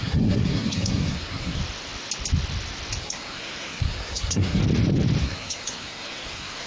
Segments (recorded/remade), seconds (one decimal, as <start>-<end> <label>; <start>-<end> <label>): 0.0-1.6 remade; 1.6-3.0 recorded; 3.0-4.6 remade; 4.6-5.2 recorded; 5.2-6.7 remade